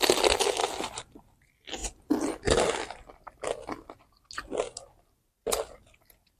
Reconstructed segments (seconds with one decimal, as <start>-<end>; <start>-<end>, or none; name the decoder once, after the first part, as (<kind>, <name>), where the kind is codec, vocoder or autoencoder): 0.6-1.1 (vocoder, BigVGAN v2)